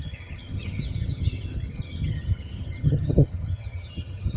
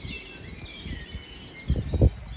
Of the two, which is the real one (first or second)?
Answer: second